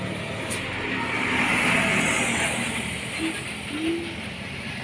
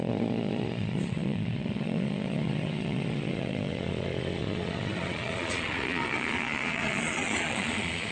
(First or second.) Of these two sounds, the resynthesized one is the second